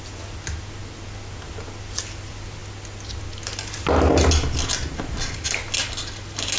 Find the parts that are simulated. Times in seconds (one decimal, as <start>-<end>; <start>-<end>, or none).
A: none